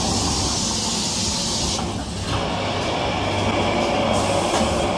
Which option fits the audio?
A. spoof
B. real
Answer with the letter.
B